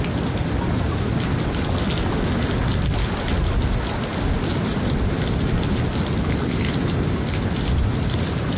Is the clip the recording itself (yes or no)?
yes